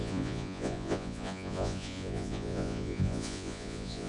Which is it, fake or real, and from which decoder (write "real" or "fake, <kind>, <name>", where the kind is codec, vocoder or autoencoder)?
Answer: fake, vocoder, Vocos